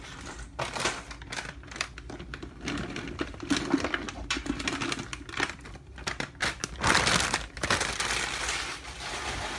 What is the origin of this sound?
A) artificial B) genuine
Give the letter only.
B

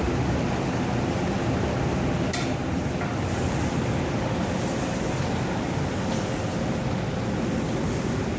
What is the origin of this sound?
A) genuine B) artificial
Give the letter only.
A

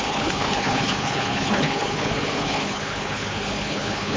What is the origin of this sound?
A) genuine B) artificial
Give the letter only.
B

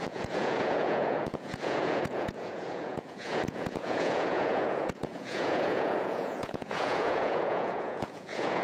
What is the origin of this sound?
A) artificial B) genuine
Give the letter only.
A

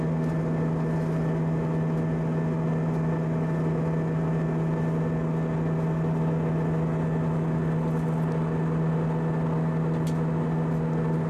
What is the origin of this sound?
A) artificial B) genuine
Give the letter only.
B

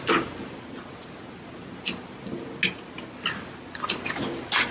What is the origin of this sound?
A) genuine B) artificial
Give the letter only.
A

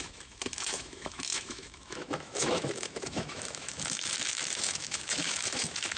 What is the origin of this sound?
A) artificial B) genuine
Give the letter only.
A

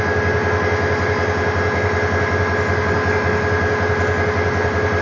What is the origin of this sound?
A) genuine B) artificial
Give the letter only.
A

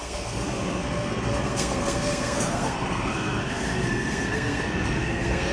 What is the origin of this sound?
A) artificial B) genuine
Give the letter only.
A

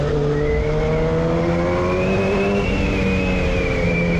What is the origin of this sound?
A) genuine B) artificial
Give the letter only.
A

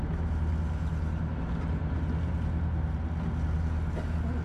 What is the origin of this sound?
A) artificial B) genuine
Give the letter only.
B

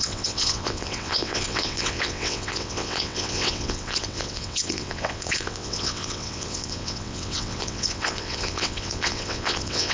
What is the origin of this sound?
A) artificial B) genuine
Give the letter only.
A